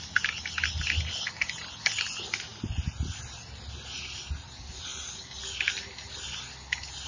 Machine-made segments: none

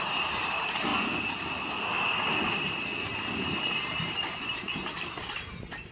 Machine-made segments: none

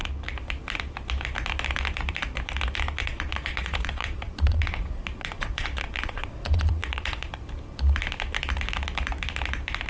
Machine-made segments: 3.0-7.3 (vocoder, Vocos)

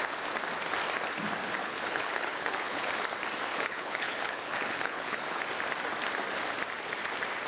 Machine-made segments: 1.6-2.9 (codec, HILCodec); 3.5-5.4

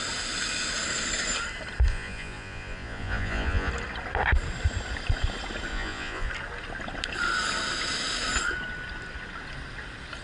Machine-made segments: 1.9-3.7 (vocoder, Vocos); 5.7-6.3

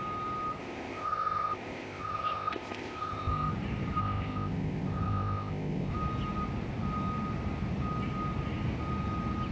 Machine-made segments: 0.6-3.5 (codec, ZipCodec); 4.0-5.9